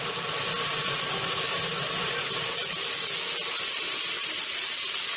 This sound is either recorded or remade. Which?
recorded